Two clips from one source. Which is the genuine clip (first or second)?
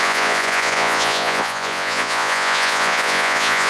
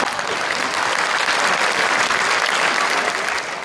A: second